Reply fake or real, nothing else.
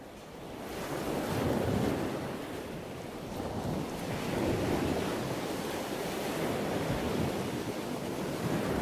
real